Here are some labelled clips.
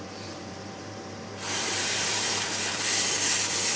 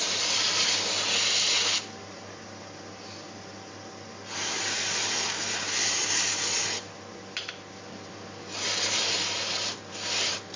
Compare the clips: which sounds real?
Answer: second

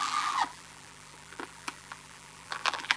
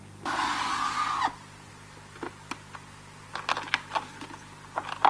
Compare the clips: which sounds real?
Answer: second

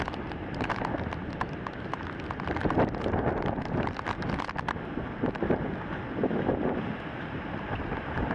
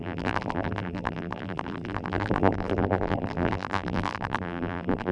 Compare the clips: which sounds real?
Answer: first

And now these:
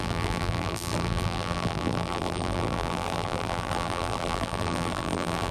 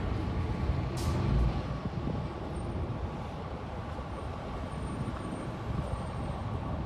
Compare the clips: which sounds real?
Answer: second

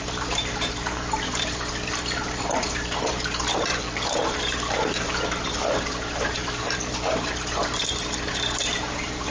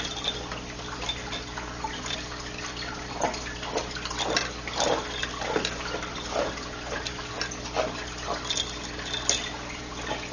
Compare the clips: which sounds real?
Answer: second